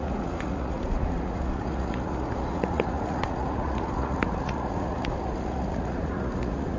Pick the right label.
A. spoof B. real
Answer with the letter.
A